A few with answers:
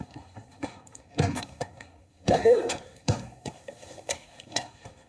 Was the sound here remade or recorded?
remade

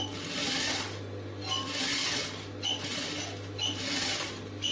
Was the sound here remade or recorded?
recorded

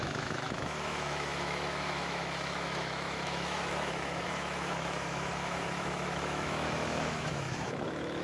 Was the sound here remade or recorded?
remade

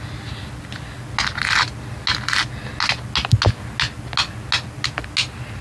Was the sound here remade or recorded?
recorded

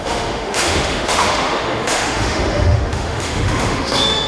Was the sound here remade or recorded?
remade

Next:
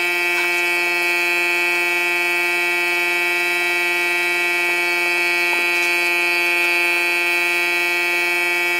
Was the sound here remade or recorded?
recorded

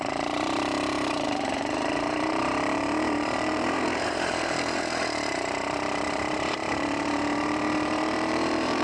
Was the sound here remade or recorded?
remade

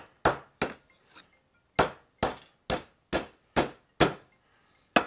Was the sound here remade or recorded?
recorded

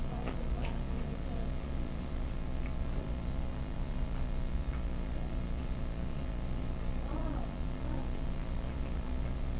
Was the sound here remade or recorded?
remade